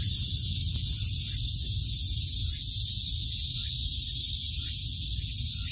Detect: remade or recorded recorded